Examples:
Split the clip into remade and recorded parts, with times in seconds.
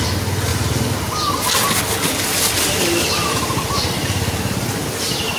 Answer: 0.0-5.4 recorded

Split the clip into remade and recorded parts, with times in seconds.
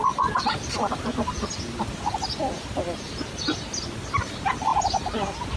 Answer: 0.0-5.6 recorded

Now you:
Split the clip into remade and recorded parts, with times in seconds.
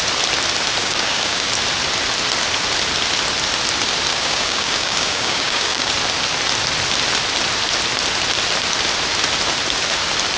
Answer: 0.0-0.8 recorded; 0.8-1.5 remade; 1.5-4.1 recorded; 4.1-5.9 remade; 5.9-10.4 recorded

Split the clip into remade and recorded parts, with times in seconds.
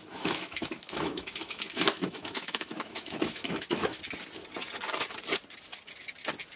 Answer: 0.0-4.0 remade; 4.0-6.6 recorded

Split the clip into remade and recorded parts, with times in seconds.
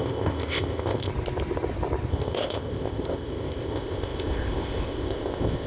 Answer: 0.0-1.1 remade; 1.1-2.1 recorded; 2.1-5.7 remade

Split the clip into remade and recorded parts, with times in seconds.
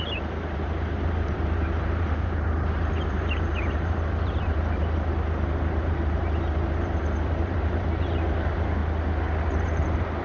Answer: 0.0-4.8 remade; 4.8-5.8 recorded; 5.8-8.8 remade; 8.8-9.6 recorded; 9.6-10.2 remade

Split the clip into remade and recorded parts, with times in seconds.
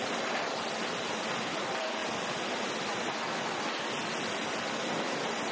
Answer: 0.0-5.5 remade